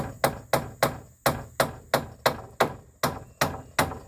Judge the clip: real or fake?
real